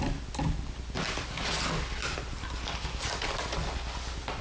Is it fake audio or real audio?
real